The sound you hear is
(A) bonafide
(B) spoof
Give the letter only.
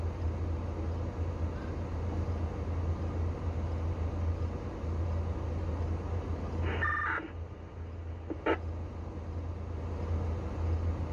A